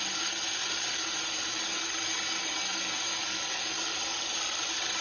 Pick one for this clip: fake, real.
real